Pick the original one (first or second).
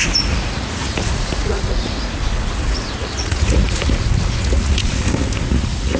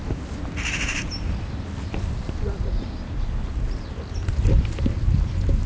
second